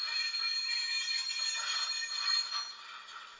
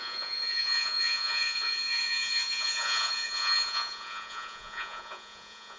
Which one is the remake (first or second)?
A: second